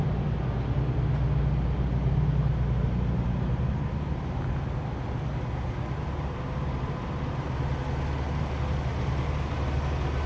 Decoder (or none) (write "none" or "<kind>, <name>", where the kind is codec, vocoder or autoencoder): none